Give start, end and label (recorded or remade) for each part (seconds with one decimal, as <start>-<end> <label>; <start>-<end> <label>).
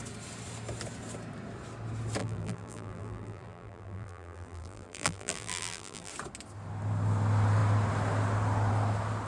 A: 0.0-2.2 recorded; 2.2-6.1 remade; 6.1-9.3 recorded